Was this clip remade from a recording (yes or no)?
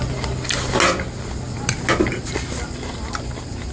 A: no